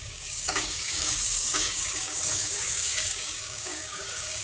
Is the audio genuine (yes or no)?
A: no